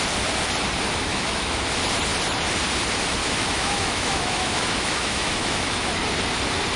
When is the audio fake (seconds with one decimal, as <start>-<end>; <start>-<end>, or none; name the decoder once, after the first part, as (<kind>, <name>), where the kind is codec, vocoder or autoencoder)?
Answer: 1.1-1.6 (autoencoder, DAC-VAE); 3.2-6.0